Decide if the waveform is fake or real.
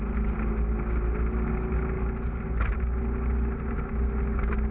real